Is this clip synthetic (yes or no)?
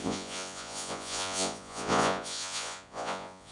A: yes